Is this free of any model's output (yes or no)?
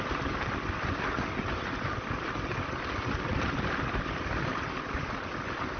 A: yes